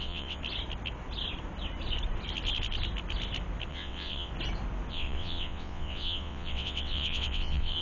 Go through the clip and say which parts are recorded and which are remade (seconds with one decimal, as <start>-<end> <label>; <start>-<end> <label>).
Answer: 0.0-0.4 remade; 0.4-3.7 recorded; 3.7-4.3 remade; 4.3-4.9 recorded; 4.9-7.8 remade